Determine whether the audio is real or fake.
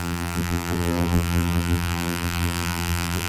fake